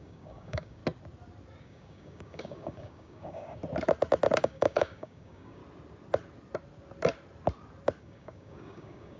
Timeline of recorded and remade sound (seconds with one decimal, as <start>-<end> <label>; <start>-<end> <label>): 0.0-0.8 remade; 0.8-1.6 recorded; 1.6-3.6 remade; 3.6-4.4 recorded; 4.4-5.6 remade; 5.6-8.0 recorded; 8.0-9.2 remade